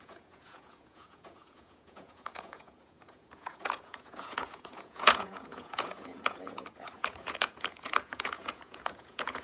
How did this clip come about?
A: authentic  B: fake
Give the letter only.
B